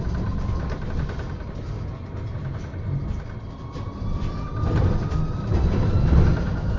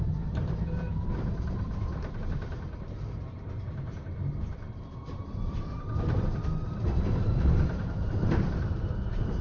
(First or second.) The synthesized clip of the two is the second